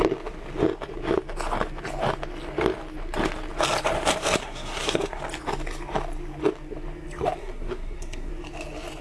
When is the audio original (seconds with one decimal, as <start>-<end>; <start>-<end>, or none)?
0.0-4.4; 5.2-7.4; 8.3-9.0